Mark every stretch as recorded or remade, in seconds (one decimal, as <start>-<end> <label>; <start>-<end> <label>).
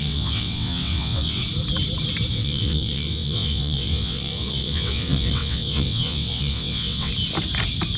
0.0-1.4 remade; 1.4-2.3 recorded; 2.3-7.1 remade; 7.1-8.0 recorded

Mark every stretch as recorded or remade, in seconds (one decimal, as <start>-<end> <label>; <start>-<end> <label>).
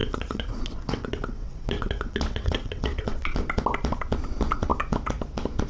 0.0-3.4 remade; 3.4-5.7 recorded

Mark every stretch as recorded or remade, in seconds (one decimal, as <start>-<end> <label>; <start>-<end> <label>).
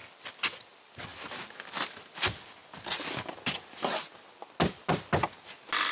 0.0-5.9 recorded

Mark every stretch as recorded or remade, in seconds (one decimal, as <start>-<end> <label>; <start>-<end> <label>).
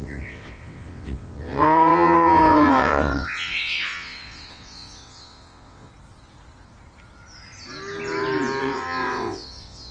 0.0-5.9 remade; 5.9-8.6 recorded; 8.6-9.9 remade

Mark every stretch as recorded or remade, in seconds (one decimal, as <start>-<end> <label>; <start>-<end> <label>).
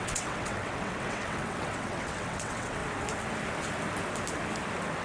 0.0-2.8 remade; 2.8-5.0 recorded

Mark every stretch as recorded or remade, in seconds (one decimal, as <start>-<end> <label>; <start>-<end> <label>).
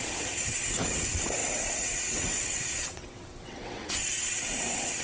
0.0-5.0 remade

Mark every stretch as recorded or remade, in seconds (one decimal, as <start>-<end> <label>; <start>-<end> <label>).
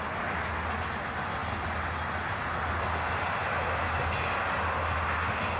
0.0-5.6 recorded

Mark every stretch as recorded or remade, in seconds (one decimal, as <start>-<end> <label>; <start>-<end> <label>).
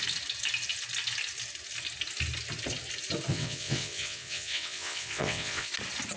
0.0-3.3 recorded; 3.3-5.7 remade; 5.7-6.2 recorded